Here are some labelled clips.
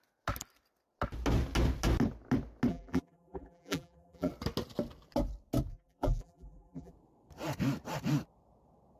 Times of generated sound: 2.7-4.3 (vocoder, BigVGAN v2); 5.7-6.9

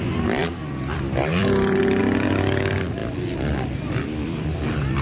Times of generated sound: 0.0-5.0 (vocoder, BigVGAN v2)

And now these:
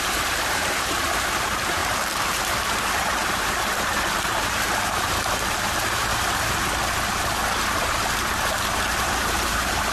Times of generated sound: 0.0-6.1 (vocoder, BigVGAN v2); 9.0-9.9